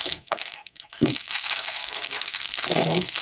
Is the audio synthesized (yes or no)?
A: yes